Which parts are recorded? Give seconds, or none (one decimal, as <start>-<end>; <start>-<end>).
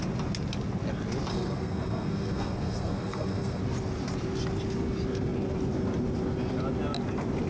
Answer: 0.0-1.3; 3.6-7.5